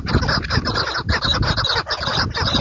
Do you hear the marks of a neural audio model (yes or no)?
no